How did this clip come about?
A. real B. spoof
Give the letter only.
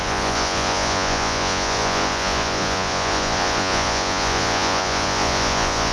B